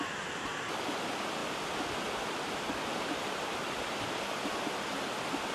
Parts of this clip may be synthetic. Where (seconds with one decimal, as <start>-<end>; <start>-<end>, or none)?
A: none